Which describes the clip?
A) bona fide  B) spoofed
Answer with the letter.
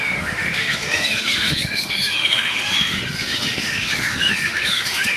B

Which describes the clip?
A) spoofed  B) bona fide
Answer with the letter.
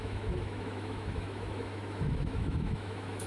A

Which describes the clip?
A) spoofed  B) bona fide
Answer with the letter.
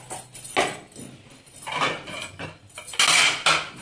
B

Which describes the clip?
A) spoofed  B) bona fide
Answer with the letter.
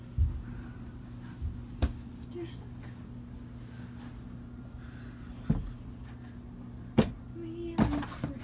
B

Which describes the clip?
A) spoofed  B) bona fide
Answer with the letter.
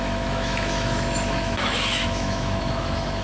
A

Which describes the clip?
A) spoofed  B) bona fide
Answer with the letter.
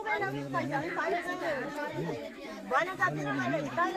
A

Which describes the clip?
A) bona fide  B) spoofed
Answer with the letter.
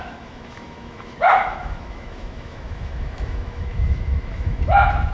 B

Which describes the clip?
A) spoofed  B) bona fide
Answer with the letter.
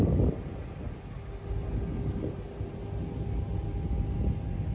B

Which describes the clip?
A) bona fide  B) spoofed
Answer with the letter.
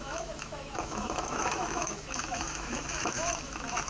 B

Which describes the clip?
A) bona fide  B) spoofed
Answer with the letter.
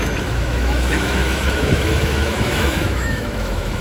B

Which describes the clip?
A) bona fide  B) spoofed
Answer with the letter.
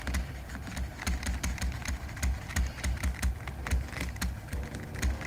A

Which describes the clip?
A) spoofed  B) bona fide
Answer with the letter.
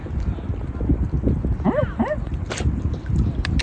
B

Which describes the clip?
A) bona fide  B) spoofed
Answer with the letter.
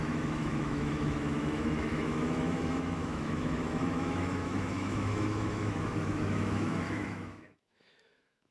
B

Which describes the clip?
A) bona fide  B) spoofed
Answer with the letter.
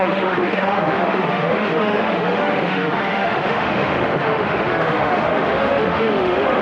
B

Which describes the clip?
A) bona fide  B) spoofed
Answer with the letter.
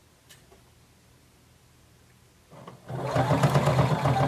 A